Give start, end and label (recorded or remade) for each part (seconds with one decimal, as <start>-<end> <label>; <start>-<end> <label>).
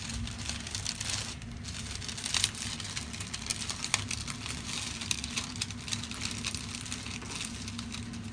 0.0-8.3 recorded